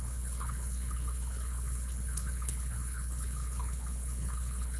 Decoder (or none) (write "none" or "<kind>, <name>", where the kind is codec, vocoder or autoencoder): codec, HILCodec